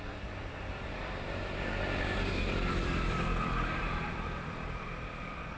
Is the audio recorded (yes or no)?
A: no